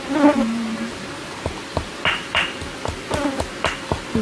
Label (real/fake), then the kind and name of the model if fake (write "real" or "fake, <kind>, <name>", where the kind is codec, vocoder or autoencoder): real